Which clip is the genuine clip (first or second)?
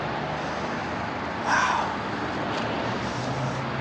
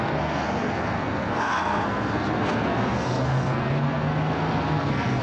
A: first